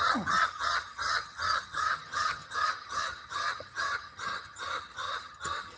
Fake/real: fake